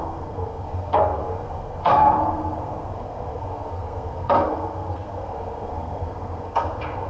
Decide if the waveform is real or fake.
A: fake